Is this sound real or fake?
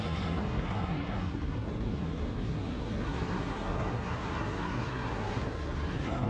fake